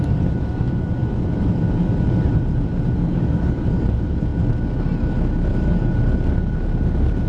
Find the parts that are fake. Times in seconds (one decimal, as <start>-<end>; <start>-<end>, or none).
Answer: 0.0-1.0; 1.5-4.3; 5.5-7.3